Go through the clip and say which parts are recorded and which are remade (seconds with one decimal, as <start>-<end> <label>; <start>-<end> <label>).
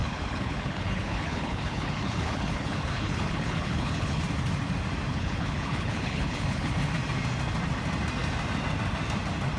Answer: 0.0-4.2 remade; 4.2-5.1 recorded; 5.1-6.7 remade; 6.7-9.6 recorded